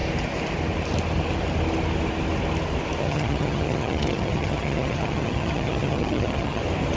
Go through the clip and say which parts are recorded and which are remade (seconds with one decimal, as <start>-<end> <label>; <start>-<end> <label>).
0.0-3.0 recorded; 3.0-6.6 remade; 6.6-7.0 recorded